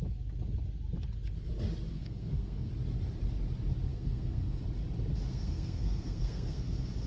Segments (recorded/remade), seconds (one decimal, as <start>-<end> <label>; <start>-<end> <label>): 0.0-1.9 recorded; 1.9-2.7 remade; 2.7-3.9 recorded; 3.9-4.6 remade; 4.6-5.3 recorded; 5.3-6.6 remade; 6.6-7.1 recorded

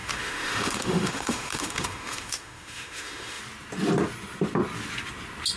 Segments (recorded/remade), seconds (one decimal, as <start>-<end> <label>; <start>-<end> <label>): 0.0-3.4 remade; 3.4-5.6 recorded